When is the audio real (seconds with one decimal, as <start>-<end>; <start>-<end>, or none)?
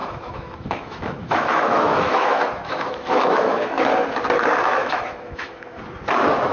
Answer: 3.9-4.8; 5.8-6.5